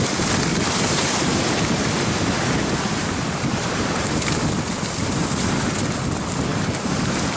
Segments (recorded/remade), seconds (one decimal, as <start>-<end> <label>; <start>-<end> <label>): 0.0-0.5 recorded; 0.5-4.3 remade; 4.3-6.5 recorded; 6.5-7.4 remade